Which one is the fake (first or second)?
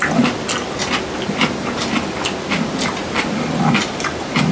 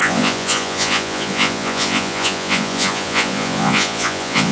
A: second